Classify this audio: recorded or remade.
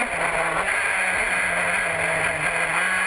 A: recorded